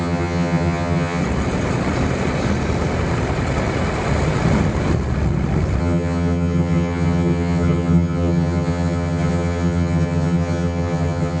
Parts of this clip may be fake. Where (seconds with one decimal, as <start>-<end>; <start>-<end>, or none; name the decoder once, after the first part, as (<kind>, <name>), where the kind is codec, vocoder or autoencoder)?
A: 0.0-1.2 (vocoder, HiFi-GAN); 5.8-11.4